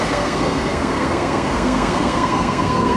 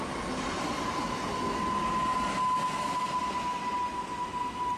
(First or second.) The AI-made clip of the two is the first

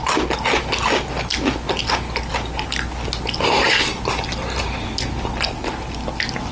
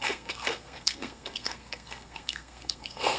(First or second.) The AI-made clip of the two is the second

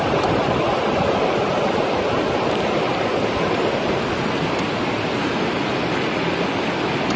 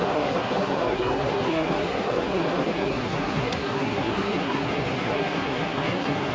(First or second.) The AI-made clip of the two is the second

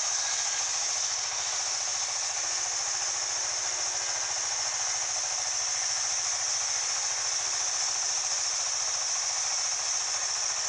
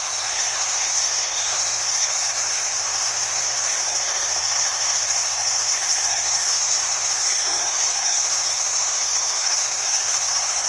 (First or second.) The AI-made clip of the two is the second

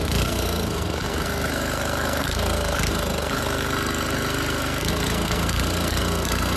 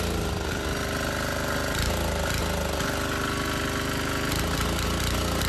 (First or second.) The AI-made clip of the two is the first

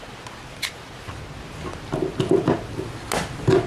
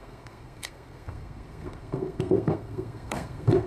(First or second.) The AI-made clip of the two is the second